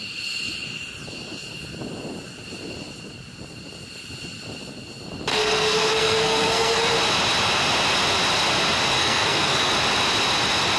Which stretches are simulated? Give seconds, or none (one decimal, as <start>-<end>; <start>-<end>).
5.3-7.0; 9.0-9.7